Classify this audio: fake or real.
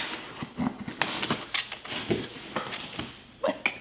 real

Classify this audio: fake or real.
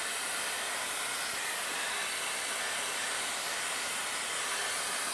real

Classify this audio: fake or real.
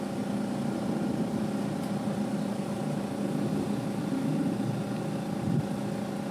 real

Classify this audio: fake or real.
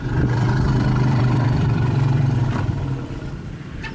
fake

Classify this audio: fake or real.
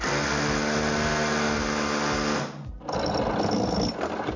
real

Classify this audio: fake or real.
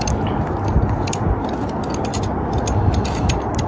real